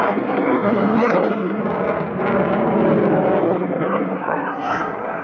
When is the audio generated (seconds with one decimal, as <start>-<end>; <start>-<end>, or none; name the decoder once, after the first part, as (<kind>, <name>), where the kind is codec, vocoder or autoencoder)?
0.0-1.6 (codec, SNAC); 3.4-5.2